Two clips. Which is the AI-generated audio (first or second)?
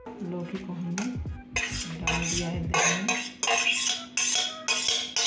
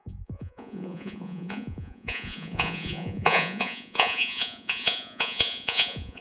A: second